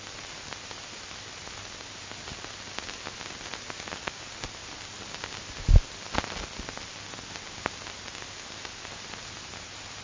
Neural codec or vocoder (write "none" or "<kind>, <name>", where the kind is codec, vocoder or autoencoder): none